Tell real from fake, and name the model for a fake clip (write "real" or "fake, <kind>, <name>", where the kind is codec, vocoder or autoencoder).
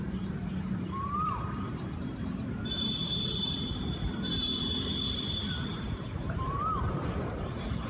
fake, vocoder, BigVGAN v2